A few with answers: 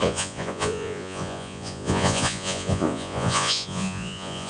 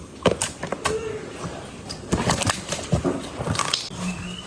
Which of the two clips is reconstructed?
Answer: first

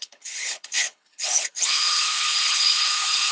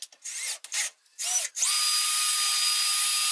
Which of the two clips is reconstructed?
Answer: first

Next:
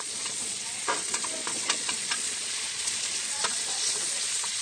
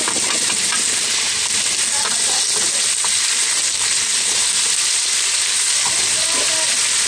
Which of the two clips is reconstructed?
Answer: first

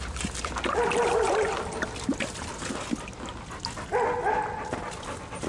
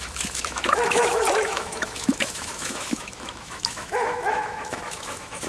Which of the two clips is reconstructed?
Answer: second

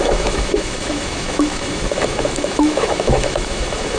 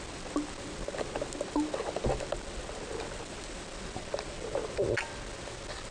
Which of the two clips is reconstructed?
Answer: first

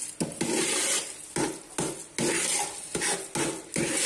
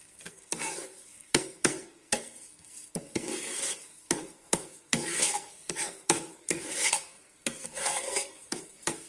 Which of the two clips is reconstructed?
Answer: second